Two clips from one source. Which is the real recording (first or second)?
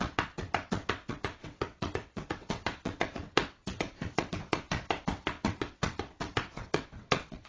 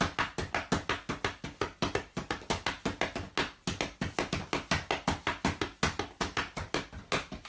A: second